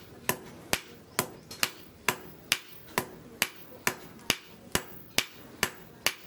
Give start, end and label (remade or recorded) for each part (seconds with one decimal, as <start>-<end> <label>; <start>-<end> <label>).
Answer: 0.0-6.3 recorded